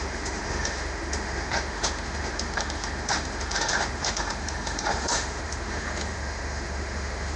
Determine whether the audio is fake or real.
fake